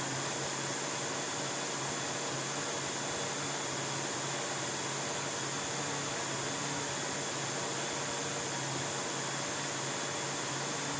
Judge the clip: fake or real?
real